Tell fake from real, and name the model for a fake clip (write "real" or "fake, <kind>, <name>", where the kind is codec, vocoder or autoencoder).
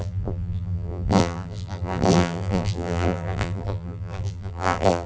fake, vocoder, BigVGAN v2